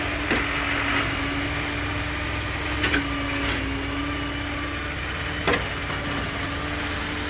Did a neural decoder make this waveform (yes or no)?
no